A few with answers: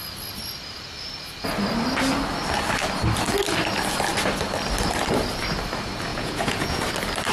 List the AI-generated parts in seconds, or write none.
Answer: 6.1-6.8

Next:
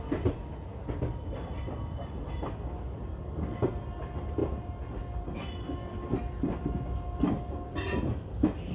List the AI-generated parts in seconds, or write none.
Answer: none

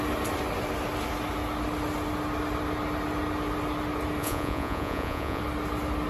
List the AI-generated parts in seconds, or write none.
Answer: 4.2-5.4

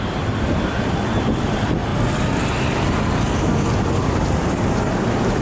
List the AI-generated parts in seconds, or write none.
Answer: none

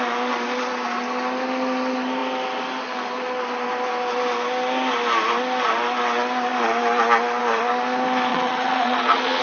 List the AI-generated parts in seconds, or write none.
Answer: 8.3-9.4

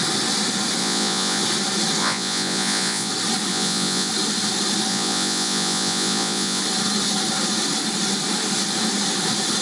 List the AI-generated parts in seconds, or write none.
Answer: 0.8-1.4; 2.0-3.1; 3.5-4.1; 4.9-6.6